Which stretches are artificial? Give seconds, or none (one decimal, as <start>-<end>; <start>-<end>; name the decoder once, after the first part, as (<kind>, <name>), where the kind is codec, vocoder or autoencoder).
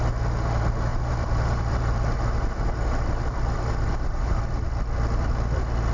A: 0.9-4.4 (vocoder, BigVGAN v2)